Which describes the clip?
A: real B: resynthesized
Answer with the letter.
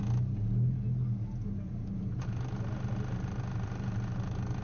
A